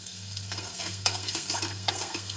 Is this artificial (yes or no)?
yes